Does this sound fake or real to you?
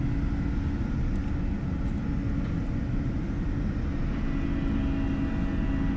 real